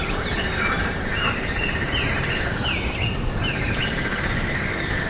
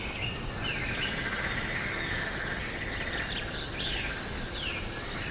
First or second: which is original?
second